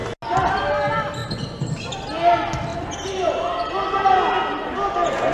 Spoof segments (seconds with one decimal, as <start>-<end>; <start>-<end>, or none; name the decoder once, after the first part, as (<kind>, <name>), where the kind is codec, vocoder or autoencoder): 1.2-1.9 (vocoder, BigVGAN v2); 2.7-3.7

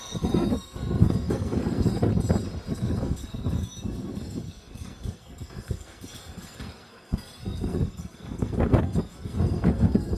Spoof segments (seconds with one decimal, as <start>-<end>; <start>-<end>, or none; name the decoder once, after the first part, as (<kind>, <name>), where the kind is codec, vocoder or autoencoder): 0.0-2.1 (codec, SNAC); 2.7-10.2

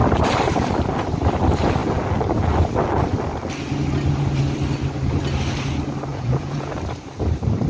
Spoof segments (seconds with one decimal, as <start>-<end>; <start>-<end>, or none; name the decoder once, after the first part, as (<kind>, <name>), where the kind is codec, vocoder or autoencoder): 6.1-6.7 (vocoder, Vocos)